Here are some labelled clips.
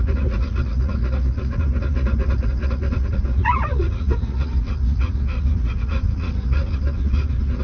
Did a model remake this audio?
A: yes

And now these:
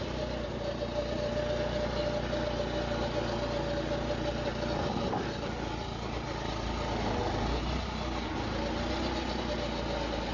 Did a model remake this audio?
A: no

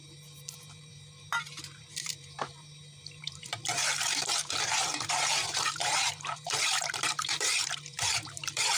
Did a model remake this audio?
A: yes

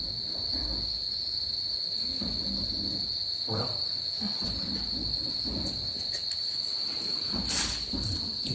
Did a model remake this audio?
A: no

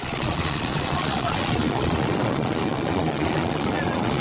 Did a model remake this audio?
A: yes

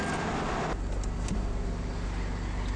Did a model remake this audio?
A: no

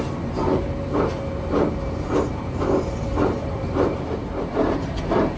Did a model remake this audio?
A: yes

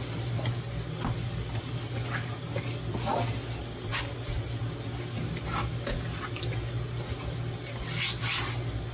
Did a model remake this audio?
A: no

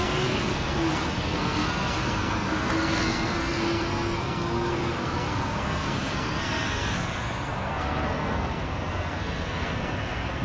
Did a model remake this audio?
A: yes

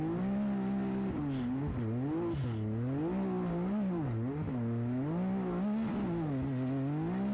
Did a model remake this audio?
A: no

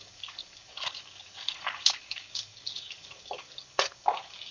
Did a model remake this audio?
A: yes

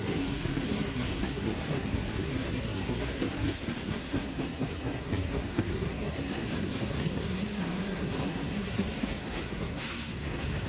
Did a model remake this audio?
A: yes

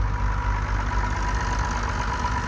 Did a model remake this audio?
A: no